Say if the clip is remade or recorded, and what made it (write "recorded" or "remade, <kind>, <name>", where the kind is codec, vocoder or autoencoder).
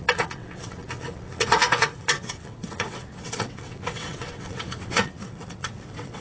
remade, vocoder, WaveNeXt